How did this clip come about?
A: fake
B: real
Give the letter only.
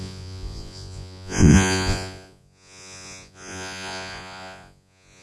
A